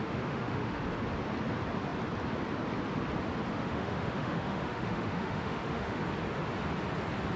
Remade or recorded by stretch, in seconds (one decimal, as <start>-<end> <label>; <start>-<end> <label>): 0.0-0.8 remade; 0.8-3.5 recorded; 3.5-6.0 remade; 6.0-7.4 recorded